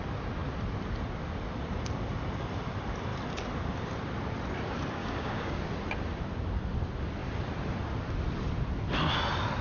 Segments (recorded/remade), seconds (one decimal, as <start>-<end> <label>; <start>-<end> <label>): 0.0-5.0 recorded; 5.0-5.6 remade; 5.6-9.6 recorded